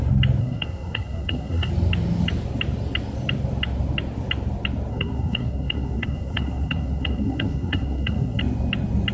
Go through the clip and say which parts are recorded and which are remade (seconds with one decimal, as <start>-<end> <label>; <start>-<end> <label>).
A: 0.0-0.4 recorded; 0.4-1.7 remade; 1.7-4.9 recorded; 4.9-8.4 remade; 8.4-9.1 recorded